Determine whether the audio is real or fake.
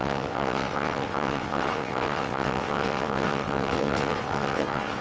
fake